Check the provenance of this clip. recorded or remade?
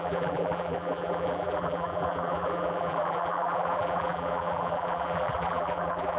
remade